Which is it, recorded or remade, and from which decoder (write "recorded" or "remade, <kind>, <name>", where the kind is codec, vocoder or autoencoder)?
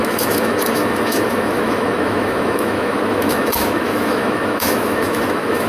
remade, autoencoder, DAC-VAE